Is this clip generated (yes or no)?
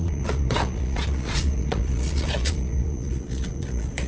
yes